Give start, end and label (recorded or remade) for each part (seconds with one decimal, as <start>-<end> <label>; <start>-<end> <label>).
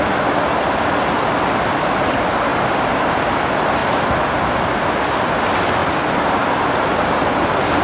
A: 0.0-7.8 recorded